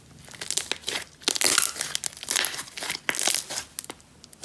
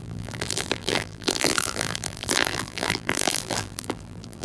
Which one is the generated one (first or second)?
second